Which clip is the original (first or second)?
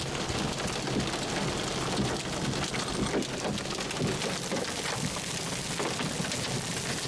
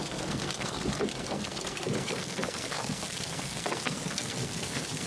first